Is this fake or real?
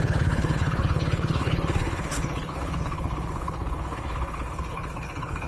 fake